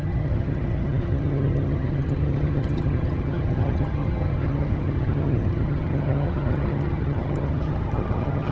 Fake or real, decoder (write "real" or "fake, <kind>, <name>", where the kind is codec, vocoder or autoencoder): fake, vocoder, HiFi-GAN